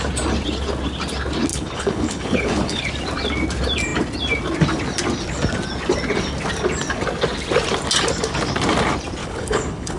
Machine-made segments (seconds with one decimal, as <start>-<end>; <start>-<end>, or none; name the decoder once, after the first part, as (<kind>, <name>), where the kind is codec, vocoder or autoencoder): 1.5-2.8 (codec, HILCodec); 9.2-10.0